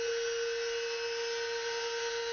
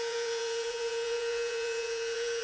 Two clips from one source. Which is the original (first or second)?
first